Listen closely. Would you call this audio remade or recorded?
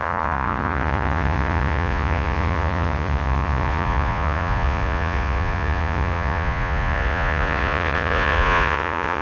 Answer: remade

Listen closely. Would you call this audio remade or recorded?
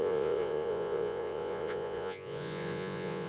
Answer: remade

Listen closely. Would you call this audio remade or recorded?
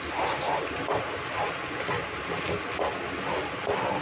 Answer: recorded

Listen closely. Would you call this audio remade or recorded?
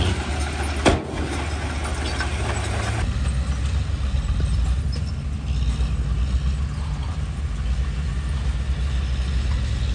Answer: recorded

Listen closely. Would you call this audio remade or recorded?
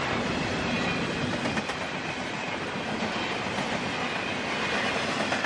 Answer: recorded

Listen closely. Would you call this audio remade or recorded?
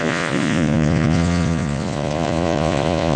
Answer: remade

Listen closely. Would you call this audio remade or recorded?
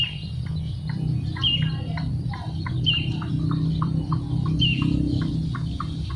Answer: recorded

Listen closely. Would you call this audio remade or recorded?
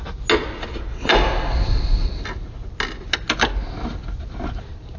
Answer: recorded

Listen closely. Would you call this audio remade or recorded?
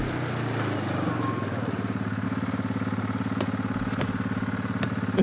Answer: recorded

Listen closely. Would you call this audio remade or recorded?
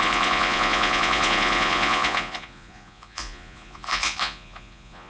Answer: remade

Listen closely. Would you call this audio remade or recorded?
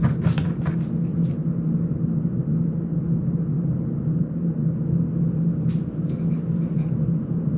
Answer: recorded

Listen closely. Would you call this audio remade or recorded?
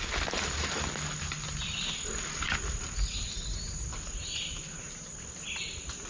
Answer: recorded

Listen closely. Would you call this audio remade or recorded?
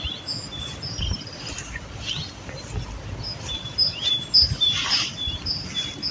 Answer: recorded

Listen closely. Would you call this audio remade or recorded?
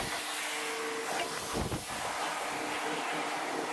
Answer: recorded